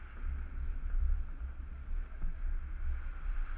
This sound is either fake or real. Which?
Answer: real